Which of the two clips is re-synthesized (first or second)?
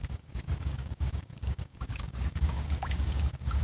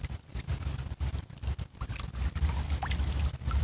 first